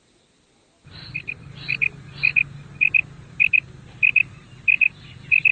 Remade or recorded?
recorded